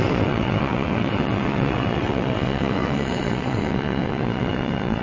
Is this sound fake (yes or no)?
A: yes